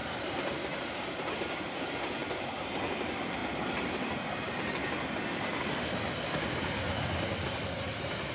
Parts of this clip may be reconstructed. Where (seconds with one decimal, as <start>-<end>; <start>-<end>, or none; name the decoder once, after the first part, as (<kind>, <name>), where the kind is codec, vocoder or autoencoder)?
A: 0.0-1.3 (vocoder, BigVGAN v2); 2.2-2.7